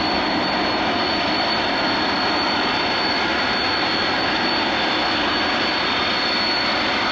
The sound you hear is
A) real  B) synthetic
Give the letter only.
A